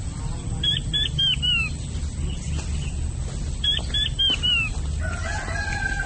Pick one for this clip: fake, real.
real